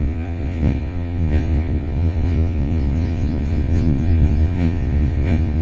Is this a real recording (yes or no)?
no